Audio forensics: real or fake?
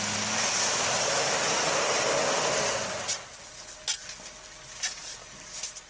real